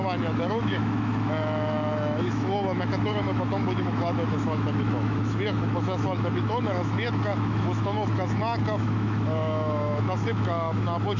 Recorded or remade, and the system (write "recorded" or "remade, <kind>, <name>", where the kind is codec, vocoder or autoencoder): remade, autoencoder, DAC-VAE